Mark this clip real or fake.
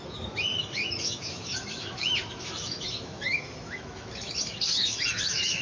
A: fake